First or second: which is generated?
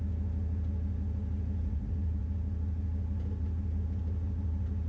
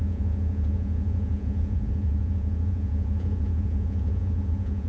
second